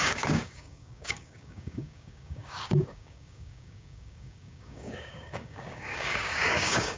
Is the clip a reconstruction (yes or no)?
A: yes